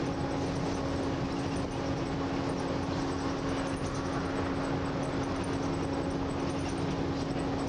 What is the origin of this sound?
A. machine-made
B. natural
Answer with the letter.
B